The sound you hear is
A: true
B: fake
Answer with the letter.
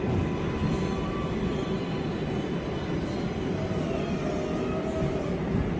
A